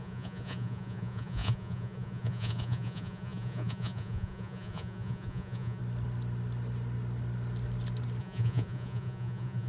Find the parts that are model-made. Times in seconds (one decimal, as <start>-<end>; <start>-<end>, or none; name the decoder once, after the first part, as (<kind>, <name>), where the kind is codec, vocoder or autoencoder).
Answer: 0.0-5.8 (vocoder, Vocos); 8.2-9.7

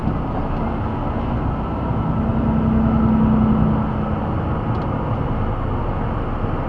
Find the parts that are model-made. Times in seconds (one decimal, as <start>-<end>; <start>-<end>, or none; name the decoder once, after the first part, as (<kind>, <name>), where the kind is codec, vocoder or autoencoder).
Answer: none